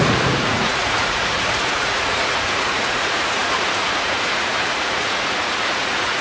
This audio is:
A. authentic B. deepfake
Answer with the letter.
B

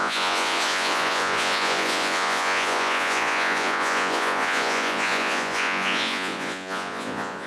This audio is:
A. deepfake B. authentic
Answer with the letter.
A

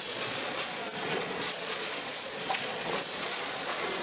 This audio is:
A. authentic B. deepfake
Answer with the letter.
B